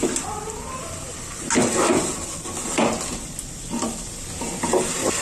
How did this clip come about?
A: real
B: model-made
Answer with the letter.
A